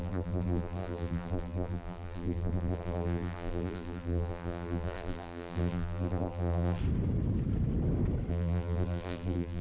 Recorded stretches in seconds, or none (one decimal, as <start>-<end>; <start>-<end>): 6.8-8.3